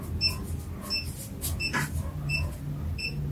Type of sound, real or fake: real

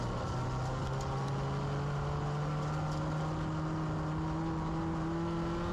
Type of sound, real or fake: real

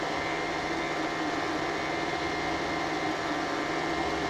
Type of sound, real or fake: real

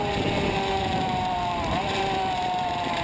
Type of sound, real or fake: fake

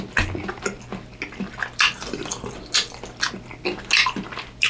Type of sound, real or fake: real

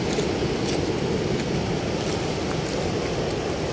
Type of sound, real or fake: real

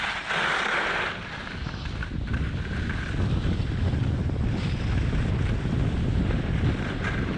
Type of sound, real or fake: real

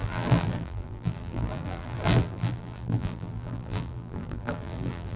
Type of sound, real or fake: fake